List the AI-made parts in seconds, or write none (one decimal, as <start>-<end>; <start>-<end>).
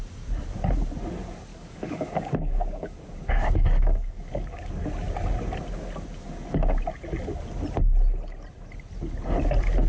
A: 1.5-4.7